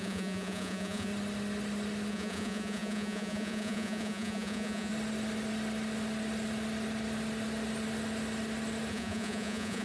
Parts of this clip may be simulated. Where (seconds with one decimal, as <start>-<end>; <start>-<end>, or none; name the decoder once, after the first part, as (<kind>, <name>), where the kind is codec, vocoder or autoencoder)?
0.0-1.1 (vocoder, Vocos); 2.1-4.9; 8.9-9.8